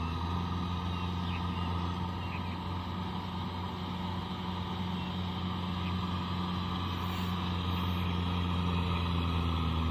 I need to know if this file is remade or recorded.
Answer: recorded